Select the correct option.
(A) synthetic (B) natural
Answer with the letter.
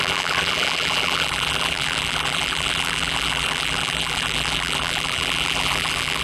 A